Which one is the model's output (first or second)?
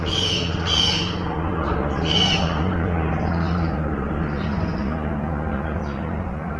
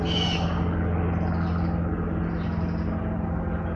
first